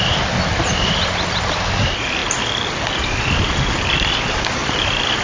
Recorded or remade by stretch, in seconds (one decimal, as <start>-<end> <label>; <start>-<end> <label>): 0.0-5.2 recorded